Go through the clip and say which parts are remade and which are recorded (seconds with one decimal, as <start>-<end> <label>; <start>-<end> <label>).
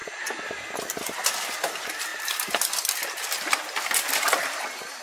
0.0-5.0 recorded